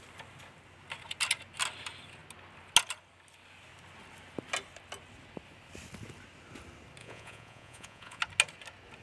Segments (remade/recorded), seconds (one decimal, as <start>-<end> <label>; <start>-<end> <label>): 0.0-7.0 recorded; 7.0-8.2 remade; 8.2-9.0 recorded